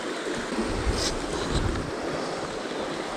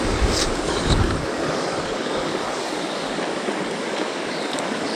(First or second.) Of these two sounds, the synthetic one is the second